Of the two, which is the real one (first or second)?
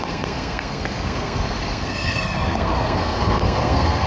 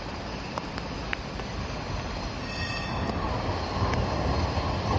second